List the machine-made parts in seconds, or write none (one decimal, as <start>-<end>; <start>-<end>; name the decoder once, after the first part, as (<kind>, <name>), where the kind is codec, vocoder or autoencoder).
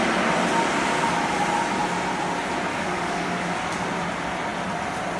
2.7-3.6 (codec, DAC)